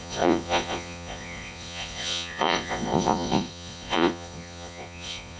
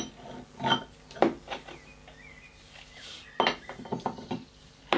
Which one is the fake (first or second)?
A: first